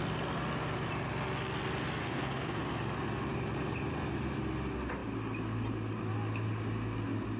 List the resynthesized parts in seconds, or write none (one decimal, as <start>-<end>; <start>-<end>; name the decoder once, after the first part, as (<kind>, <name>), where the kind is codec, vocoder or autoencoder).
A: 2.0-2.6 (codec, SNAC)